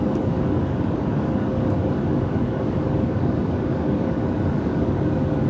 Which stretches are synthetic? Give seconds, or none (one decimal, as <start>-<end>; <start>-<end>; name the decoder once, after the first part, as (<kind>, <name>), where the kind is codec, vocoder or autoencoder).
0.0-5.5 (codec, DAC)